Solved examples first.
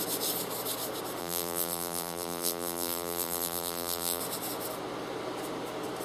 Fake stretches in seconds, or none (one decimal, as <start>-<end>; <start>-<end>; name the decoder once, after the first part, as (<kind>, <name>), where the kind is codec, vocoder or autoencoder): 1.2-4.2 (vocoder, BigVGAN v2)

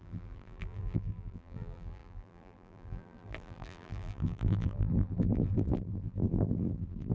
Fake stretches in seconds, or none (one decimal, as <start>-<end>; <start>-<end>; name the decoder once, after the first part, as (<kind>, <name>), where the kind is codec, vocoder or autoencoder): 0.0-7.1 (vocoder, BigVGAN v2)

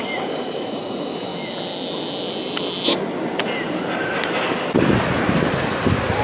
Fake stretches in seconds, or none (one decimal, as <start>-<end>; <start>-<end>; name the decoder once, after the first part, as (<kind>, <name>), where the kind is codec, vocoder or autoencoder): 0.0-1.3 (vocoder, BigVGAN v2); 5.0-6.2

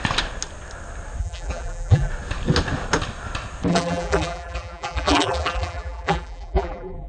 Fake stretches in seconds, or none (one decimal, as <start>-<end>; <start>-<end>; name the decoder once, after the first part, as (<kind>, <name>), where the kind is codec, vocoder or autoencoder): 1.2-2.1 (vocoder, BigVGAN v2); 3.7-7.1

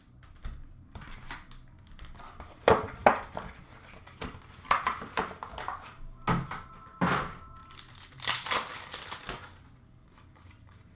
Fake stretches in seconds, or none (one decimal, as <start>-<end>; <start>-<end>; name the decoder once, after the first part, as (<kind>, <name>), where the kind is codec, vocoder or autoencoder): none

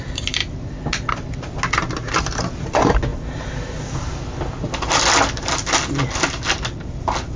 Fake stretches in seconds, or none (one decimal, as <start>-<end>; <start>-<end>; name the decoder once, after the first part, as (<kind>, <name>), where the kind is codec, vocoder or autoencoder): none